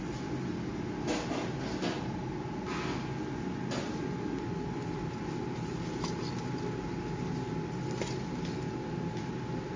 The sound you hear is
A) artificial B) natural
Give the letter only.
B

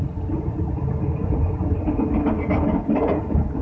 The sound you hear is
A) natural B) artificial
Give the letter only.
A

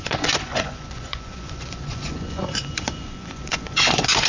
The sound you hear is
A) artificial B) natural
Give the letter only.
A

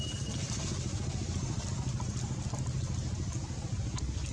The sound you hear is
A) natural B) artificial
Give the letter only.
A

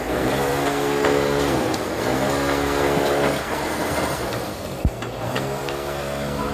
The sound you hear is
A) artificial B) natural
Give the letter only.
A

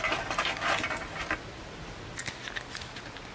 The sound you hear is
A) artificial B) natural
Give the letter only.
B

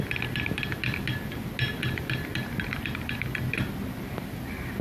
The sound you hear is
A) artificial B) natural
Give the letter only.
B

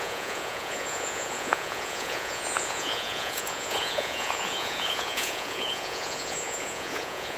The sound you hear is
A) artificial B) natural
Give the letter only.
A